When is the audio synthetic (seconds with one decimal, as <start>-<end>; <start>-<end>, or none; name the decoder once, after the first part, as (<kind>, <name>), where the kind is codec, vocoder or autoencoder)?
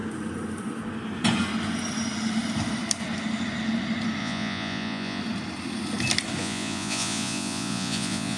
4.2-5.2 (vocoder, Vocos); 6.4-8.4